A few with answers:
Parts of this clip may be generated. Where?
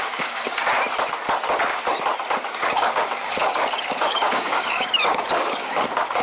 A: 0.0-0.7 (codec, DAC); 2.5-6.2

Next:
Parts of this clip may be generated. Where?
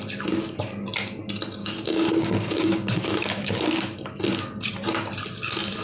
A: 1.6-3.6 (codec, DAC)